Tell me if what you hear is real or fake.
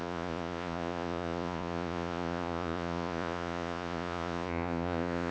fake